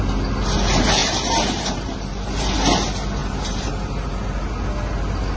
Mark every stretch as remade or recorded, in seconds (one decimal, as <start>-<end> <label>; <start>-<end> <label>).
0.0-1.0 recorded; 1.0-2.5 remade; 2.5-3.2 recorded; 3.2-4.2 remade; 4.2-5.4 recorded